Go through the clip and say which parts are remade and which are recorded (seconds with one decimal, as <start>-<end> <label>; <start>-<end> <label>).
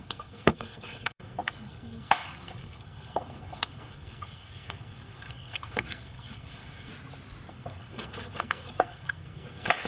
0.0-6.9 remade; 6.9-7.5 recorded; 7.5-9.9 remade